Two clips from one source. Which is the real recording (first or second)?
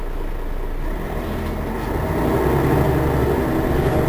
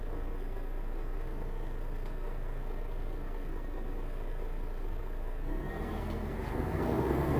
first